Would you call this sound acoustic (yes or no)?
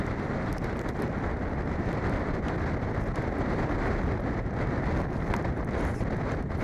yes